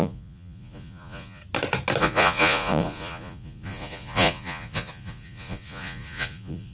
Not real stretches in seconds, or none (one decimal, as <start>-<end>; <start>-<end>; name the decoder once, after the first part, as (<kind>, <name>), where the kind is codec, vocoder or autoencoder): 0.0-1.4 (vocoder, Vocos); 2.0-6.7